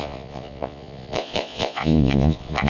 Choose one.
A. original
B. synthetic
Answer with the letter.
B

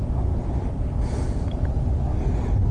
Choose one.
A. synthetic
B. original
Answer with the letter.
B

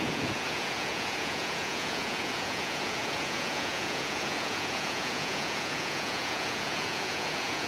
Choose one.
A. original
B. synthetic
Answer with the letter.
B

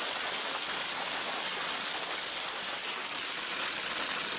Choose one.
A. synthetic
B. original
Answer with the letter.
B